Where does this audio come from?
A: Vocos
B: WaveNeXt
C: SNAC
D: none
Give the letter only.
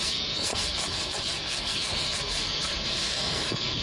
C